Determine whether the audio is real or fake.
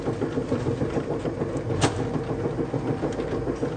real